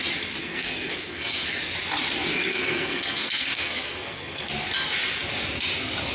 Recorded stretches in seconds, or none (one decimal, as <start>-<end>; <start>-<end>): 0.0-0.4; 1.6-2.5; 4.5-6.1